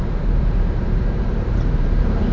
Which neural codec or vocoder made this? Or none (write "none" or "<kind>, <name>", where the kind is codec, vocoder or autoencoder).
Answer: vocoder, BigVGAN v2